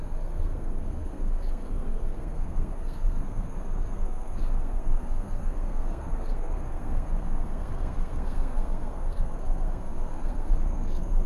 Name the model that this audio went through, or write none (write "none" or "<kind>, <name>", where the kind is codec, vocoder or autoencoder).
codec, SNAC